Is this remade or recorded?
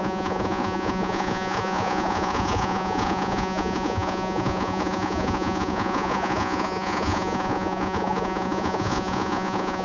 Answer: remade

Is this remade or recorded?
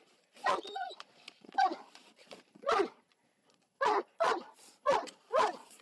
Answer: remade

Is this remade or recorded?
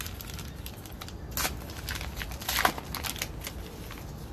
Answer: recorded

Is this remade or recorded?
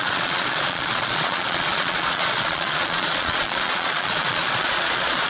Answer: remade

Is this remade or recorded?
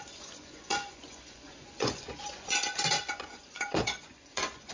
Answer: remade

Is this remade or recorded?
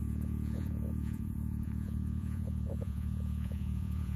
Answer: remade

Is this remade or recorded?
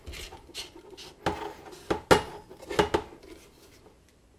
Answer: recorded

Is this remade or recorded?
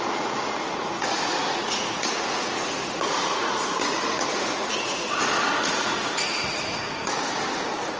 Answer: remade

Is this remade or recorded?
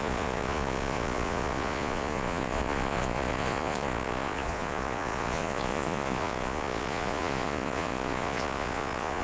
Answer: remade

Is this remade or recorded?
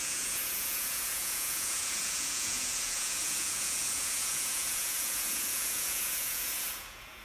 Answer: remade